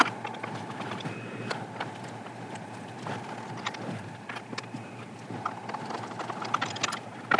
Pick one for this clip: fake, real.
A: real